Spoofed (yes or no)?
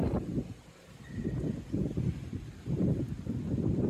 no